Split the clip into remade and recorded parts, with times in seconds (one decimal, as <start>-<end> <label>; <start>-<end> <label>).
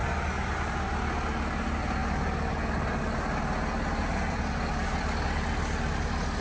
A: 0.0-6.4 recorded